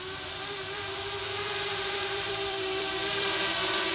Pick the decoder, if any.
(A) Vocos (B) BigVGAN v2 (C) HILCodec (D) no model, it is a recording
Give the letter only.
B